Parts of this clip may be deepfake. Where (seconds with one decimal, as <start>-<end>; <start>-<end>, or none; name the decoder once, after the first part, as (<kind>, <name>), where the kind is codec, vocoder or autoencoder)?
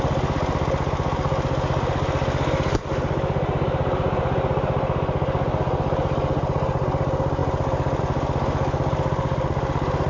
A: none